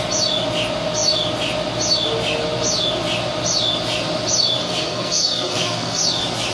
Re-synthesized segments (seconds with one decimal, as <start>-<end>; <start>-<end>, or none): 4.6-6.0